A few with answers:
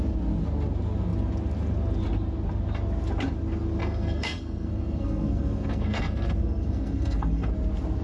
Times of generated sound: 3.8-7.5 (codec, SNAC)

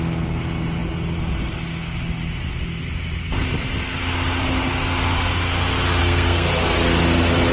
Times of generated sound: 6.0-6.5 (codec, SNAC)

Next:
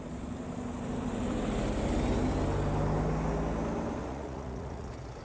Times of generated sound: 4.0-5.2 (vocoder, Vocos)